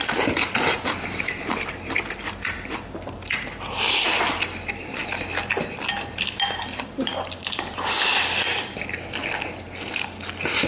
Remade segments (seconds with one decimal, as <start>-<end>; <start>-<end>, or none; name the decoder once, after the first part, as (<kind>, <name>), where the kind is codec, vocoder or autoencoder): 0.0-5.0 (vocoder, BigVGAN v2); 6.1-10.7